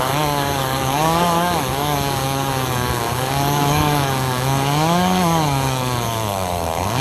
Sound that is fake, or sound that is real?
fake